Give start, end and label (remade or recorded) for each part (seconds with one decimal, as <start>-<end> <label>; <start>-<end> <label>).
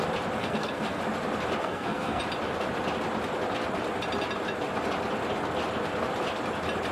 0.0-0.4 recorded; 0.4-1.0 remade; 1.0-1.6 recorded; 1.6-2.2 remade; 2.2-6.9 recorded